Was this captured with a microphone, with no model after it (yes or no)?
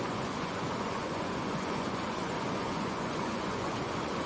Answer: no